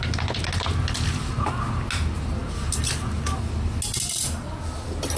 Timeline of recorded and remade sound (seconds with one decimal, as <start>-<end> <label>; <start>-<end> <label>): 0.0-5.2 recorded